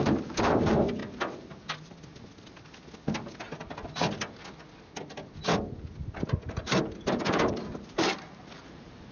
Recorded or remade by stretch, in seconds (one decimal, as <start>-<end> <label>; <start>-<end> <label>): 0.0-1.0 remade; 1.0-6.3 recorded; 6.3-9.1 remade